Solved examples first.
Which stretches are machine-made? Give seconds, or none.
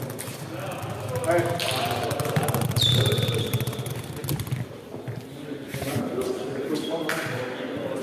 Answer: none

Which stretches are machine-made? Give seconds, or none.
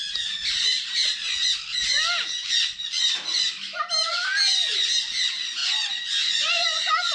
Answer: 5.6-7.1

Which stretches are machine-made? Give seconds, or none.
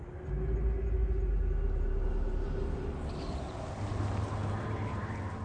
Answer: none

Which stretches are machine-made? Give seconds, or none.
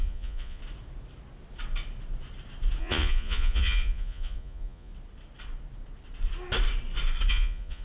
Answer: 0.0-0.6; 2.8-4.9; 7.3-7.8